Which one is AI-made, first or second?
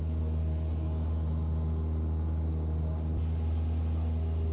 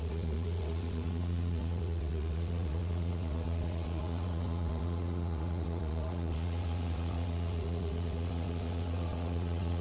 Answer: second